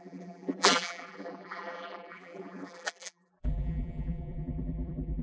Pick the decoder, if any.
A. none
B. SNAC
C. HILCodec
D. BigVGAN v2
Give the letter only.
D